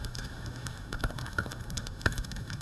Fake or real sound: fake